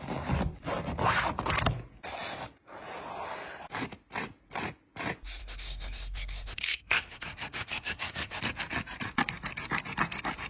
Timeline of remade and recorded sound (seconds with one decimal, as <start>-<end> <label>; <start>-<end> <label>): 0.0-5.4 recorded; 5.4-8.4 remade; 8.4-10.5 recorded